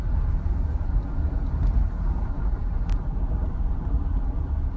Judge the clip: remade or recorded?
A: recorded